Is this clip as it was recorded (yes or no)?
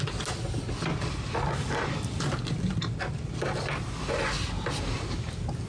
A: yes